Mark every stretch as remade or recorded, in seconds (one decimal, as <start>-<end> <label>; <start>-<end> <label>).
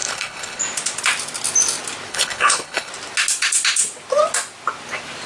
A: 0.0-0.6 remade; 0.6-2.1 recorded; 2.1-2.9 remade; 2.9-5.3 recorded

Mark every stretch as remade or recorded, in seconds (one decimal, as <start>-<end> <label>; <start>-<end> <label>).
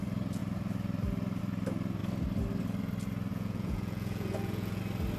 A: 0.0-3.3 recorded; 3.3-4.8 remade; 4.8-5.2 recorded